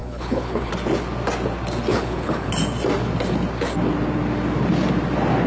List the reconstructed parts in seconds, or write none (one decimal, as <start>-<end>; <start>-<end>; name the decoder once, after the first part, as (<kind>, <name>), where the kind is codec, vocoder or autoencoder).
0.0-0.7 (codec, HILCodec); 1.9-2.5